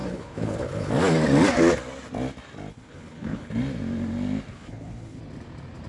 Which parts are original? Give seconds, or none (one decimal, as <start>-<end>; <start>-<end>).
0.9-2.7; 3.5-4.5; 5.2-5.9